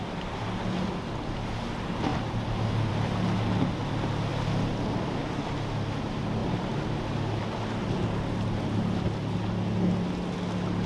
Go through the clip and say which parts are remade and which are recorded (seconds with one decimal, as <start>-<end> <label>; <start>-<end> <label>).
0.0-10.9 recorded